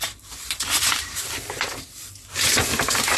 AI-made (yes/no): yes